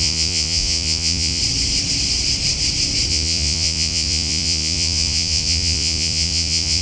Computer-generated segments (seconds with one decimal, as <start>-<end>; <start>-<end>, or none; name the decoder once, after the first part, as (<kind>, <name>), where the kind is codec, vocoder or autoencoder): 0.0-1.4 (vocoder, Vocos); 3.1-6.8